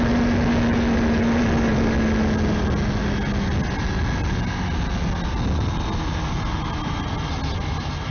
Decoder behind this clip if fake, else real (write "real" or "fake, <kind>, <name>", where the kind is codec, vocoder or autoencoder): real